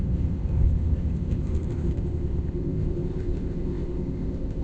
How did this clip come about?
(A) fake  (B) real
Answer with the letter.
A